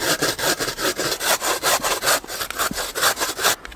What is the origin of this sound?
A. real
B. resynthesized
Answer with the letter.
A